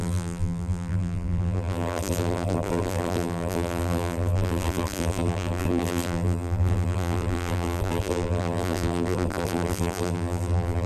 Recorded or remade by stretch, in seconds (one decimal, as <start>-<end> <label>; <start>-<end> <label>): 0.0-10.9 remade